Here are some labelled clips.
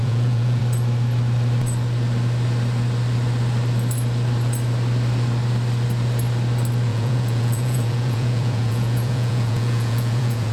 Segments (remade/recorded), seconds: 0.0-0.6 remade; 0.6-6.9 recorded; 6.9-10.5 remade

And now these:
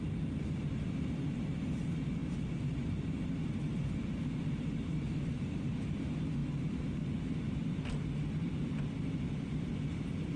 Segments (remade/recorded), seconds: 0.0-10.4 recorded

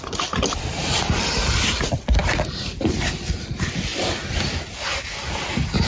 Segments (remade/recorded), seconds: 0.0-3.9 remade; 3.9-5.9 recorded